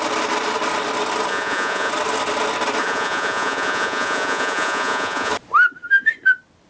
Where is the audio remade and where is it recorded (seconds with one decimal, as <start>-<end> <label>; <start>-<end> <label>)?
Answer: 0.0-1.3 recorded; 1.3-1.9 remade; 1.9-2.8 recorded; 2.8-5.3 remade; 5.3-6.7 recorded